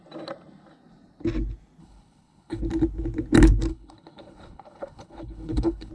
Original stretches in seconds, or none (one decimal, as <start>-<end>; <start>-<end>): 0.0-1.8; 2.6-3.7